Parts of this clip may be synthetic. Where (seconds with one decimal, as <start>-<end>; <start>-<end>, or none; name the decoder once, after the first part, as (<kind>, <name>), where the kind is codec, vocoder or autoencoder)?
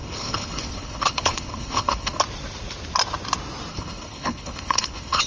0.0-2.2 (codec, HILCodec); 3.7-5.3